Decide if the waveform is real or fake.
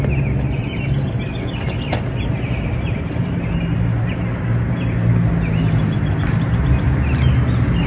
real